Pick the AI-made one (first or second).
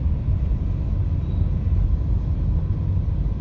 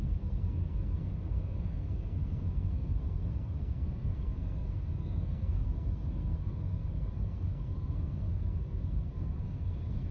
second